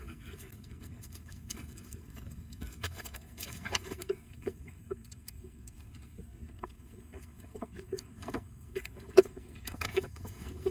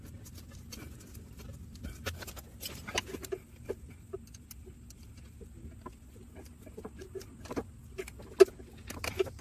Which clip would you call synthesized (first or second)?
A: first